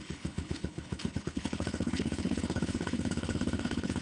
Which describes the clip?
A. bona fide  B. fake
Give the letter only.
B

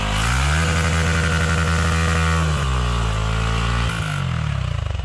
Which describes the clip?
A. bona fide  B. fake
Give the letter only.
A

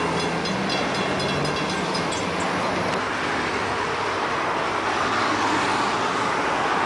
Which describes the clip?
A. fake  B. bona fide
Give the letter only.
B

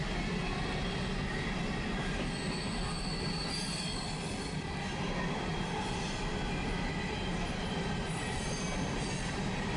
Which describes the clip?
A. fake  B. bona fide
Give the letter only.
B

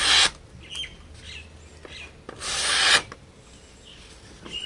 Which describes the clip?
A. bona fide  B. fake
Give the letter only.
A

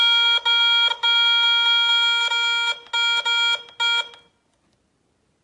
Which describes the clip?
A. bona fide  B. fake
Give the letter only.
A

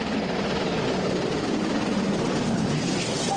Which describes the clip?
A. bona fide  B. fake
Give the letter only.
A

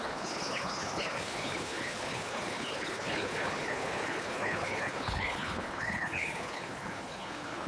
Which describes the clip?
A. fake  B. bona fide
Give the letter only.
A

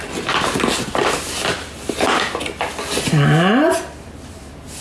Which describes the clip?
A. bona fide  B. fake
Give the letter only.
A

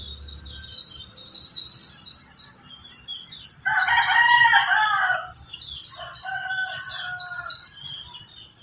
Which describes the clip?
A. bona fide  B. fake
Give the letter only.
A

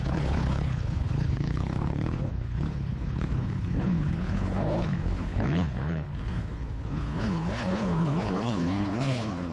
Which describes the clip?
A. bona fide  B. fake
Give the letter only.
B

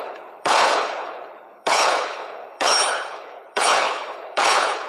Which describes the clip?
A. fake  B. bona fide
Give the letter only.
A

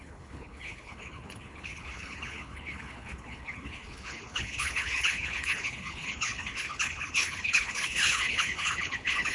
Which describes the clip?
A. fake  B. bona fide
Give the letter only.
A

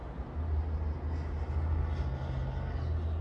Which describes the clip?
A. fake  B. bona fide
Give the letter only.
B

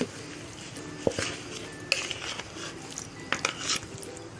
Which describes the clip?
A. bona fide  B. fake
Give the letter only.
A